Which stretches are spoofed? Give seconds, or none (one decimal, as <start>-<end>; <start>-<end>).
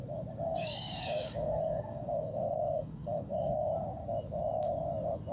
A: 0.5-3.7